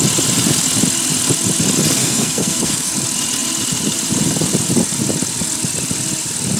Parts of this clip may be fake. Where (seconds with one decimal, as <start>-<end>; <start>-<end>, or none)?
2.0-2.9